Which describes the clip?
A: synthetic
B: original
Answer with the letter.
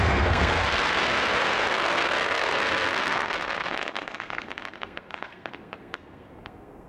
A